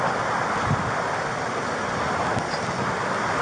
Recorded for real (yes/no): yes